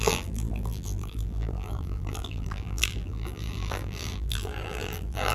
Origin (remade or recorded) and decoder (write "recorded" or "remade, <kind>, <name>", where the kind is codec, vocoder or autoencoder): remade, vocoder, BigVGAN v2